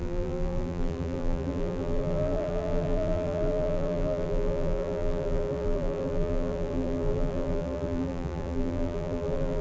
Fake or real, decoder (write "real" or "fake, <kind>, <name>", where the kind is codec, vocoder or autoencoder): fake, vocoder, BigVGAN v2